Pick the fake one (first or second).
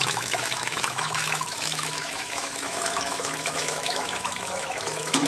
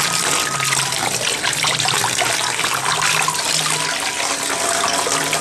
first